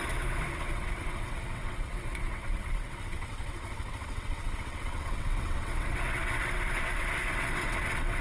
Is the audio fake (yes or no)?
yes